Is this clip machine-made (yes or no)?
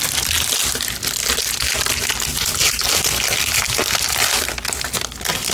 no